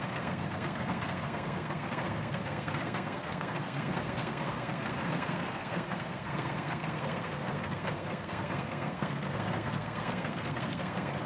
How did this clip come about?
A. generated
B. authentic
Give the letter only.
A